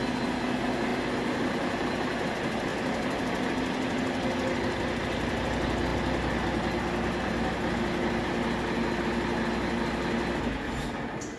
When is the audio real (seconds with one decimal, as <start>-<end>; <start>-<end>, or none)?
0.0-11.4